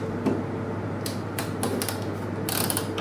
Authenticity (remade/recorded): recorded